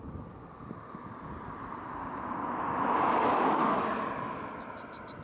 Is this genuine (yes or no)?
yes